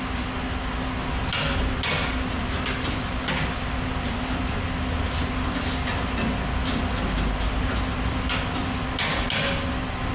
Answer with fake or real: real